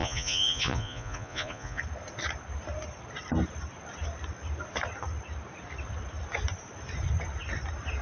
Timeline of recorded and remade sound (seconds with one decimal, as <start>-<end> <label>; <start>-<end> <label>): 0.0-1.8 remade; 1.8-8.0 recorded